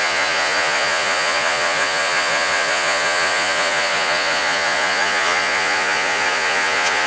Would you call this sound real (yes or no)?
no